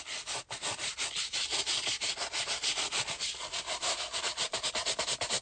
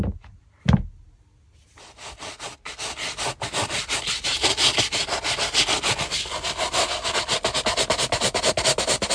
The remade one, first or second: first